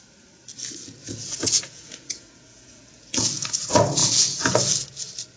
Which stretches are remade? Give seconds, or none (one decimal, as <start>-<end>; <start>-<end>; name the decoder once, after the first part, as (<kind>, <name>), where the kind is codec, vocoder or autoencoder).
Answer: 1.0-3.6 (vocoder, Vocos); 4.0-4.7